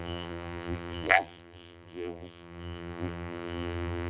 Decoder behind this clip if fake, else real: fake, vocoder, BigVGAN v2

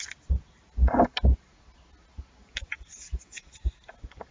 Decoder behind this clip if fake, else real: real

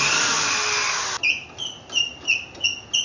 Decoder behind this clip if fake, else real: real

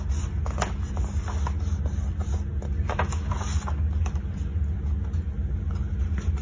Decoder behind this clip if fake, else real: real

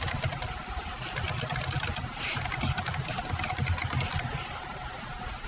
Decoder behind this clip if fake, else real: real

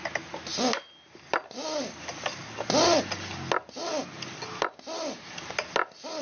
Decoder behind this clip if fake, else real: real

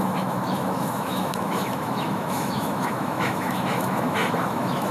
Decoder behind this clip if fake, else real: fake, autoencoder, DAC-VAE